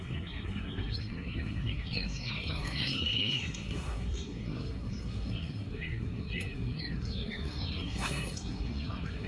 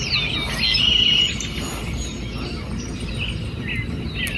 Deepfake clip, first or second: first